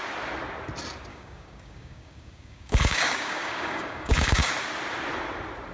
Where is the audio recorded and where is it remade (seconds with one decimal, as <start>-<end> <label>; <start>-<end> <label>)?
0.0-1.1 recorded; 1.1-4.5 remade; 4.5-5.7 recorded